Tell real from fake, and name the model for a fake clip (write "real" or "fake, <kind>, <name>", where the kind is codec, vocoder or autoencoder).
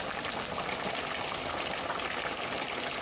real